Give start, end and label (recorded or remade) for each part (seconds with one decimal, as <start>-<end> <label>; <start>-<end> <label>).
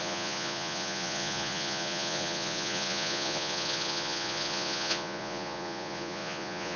0.0-6.8 remade